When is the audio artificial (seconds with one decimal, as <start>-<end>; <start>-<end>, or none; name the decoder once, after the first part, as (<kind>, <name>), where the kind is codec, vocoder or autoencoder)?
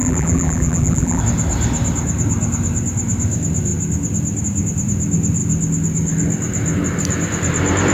0.0-1.2 (vocoder, BigVGAN v2)